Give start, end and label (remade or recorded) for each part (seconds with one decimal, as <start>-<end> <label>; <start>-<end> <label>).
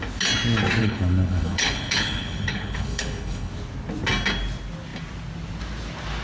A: 0.0-0.8 recorded; 0.8-3.5 remade; 3.5-6.2 recorded